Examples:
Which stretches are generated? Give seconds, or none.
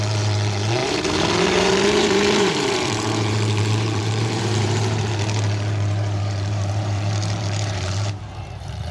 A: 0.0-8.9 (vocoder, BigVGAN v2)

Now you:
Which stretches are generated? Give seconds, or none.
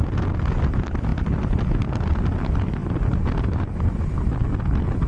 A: 1.1-2.0 (vocoder, BigVGAN v2); 2.8-4.6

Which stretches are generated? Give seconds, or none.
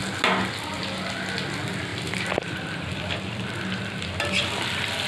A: 1.9-3.5 (vocoder, BigVGAN v2)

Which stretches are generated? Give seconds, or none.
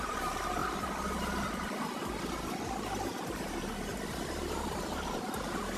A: 0.0-3.9 (vocoder, BigVGAN v2); 4.4-5.8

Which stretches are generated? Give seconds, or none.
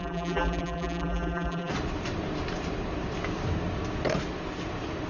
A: 0.0-1.7 (vocoder, BigVGAN v2)